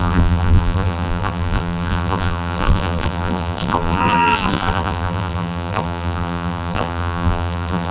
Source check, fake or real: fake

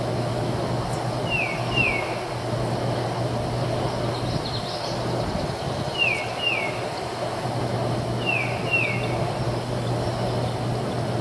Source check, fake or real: real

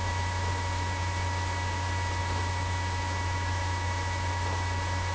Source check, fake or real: fake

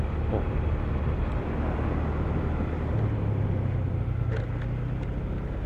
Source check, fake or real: real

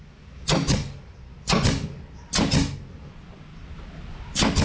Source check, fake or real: real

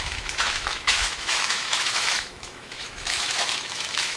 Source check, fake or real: fake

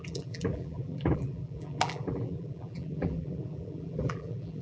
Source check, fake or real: fake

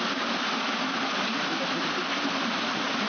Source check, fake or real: real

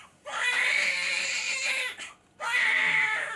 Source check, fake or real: real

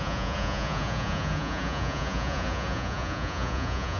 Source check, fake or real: fake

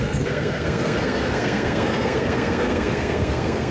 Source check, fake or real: fake